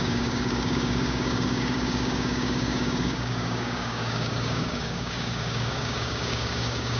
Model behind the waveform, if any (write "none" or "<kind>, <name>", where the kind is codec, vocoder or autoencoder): codec, DAC